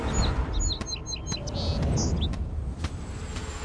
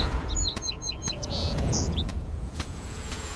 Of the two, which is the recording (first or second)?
first